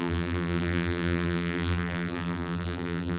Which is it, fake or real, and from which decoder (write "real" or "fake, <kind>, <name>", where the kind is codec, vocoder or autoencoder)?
fake, vocoder, BigVGAN v2